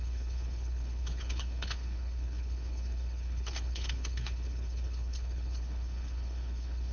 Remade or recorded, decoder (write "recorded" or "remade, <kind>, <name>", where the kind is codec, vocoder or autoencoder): remade, codec, HILCodec